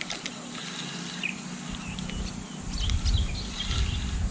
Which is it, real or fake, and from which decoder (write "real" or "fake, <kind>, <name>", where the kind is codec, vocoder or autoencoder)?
real